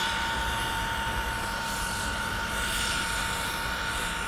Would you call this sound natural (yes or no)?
no